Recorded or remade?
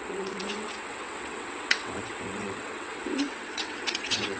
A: remade